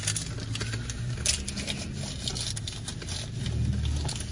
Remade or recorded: recorded